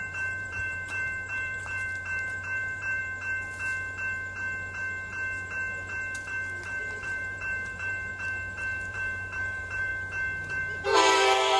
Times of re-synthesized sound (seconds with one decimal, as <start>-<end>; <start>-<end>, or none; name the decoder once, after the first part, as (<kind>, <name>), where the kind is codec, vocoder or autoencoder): 0.0-3.0 (vocoder, BigVGAN v2); 6.8-8.1; 8.9-9.9; 10.5-11.6